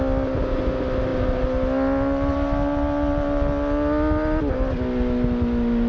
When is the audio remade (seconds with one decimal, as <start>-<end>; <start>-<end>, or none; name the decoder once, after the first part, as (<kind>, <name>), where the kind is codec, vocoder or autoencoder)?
none